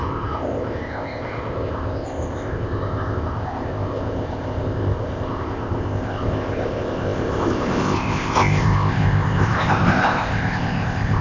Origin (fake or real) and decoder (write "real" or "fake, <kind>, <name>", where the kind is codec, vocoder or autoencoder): fake, codec, ZipCodec